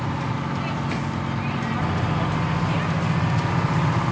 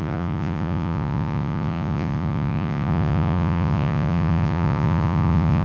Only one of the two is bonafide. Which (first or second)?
first